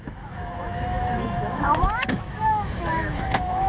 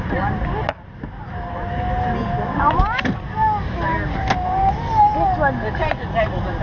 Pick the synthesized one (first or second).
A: first